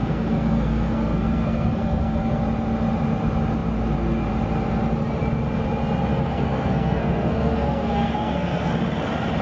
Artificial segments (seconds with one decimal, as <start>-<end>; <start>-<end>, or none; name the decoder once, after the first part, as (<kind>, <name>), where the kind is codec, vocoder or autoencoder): 0.0-2.4 (codec, SNAC); 6.1-8.7